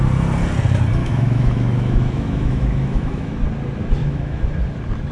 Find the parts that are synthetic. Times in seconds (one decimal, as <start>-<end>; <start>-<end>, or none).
1.0-3.4; 4.0-4.6